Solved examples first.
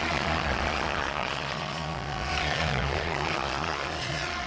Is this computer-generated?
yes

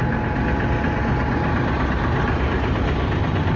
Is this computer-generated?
no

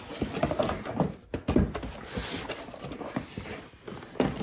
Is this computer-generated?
no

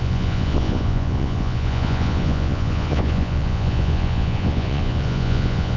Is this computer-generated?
yes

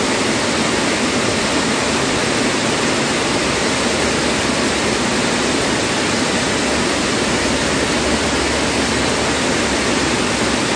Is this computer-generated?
no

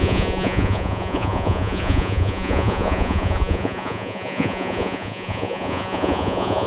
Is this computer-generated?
yes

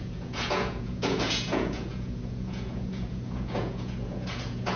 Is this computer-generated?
yes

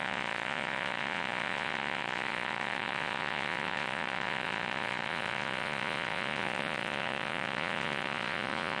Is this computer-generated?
yes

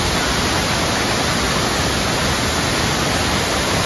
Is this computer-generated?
no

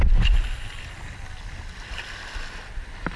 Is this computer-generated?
no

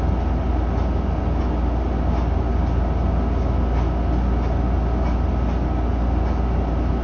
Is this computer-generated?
no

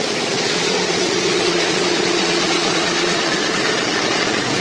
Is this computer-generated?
yes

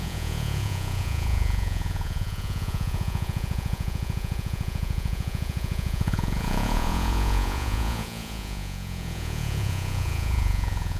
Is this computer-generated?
yes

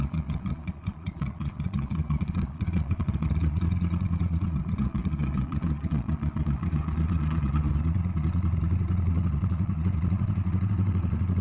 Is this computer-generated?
yes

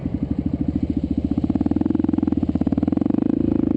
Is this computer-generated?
no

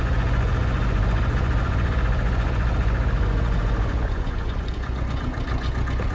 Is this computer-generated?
yes